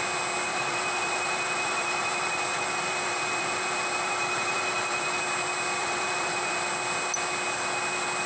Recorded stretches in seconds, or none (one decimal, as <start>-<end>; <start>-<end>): 0.0-0.5; 5.2-5.8; 6.7-8.3